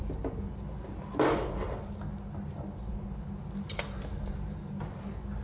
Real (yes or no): yes